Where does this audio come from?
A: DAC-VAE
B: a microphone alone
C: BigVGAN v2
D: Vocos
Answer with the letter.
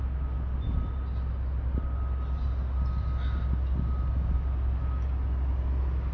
B